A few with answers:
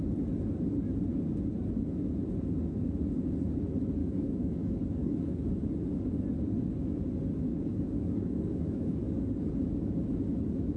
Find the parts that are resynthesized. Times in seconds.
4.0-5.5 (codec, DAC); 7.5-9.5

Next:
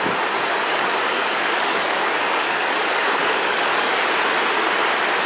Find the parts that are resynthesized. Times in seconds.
0.7-3.9 (codec, DAC)